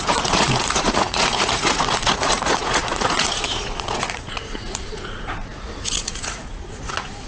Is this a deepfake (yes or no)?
yes